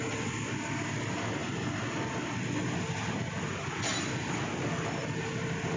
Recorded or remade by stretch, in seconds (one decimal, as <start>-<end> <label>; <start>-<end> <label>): 0.0-5.8 recorded